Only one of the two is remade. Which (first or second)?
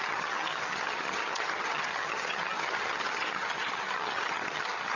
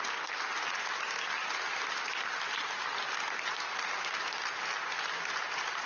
first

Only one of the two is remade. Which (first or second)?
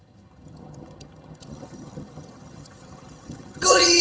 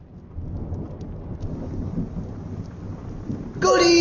first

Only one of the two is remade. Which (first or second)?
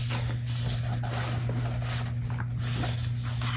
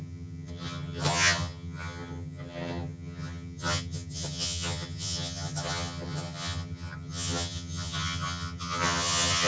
second